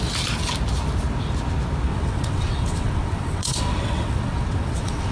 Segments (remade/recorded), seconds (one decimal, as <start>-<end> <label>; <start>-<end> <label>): 0.0-1.9 recorded; 1.9-5.1 remade